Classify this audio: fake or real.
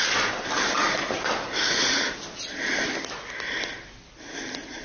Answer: real